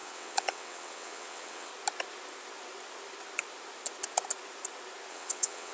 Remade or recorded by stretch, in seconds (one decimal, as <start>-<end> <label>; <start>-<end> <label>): 0.0-1.7 remade; 1.7-5.1 recorded; 5.1-5.7 remade